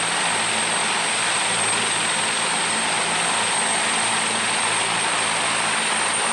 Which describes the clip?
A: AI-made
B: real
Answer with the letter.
B